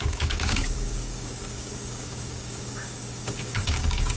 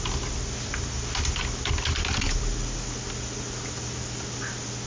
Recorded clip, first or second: second